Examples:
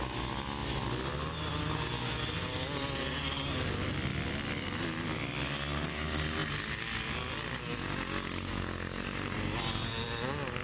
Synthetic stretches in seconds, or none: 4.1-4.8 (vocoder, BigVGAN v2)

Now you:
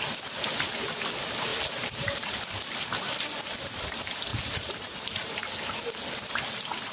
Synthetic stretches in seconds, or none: 1.5-2.4 (vocoder, BigVGAN v2); 4.3-6.3

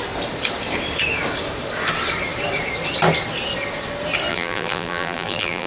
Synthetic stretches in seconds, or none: 4.3-5.7 (vocoder, BigVGAN v2)